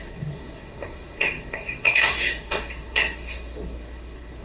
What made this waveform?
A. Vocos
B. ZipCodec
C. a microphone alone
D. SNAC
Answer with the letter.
D